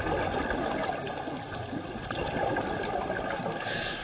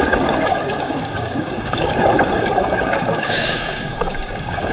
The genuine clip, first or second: first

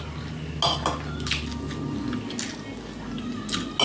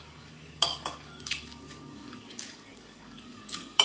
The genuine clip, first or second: first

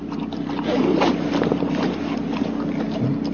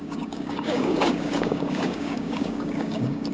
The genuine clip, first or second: first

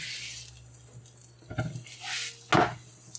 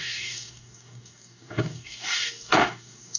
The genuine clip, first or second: first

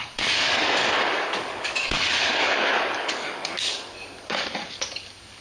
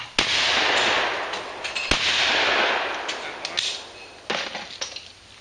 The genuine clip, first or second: second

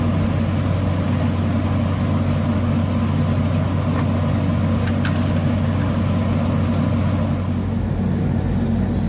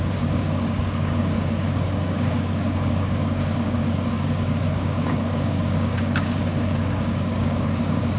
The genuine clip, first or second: first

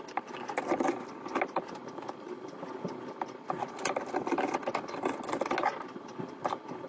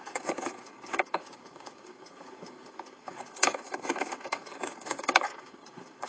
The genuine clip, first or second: first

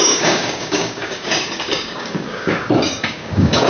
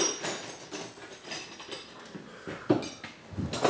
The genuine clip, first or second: second